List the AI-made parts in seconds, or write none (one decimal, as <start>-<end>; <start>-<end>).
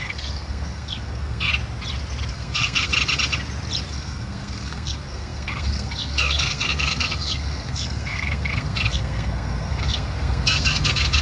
0.0-1.5; 2.3-2.9; 3.9-11.2